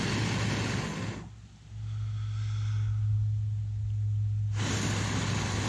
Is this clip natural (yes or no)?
yes